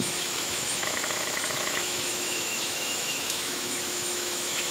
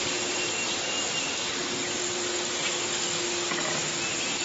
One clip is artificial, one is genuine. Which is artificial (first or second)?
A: first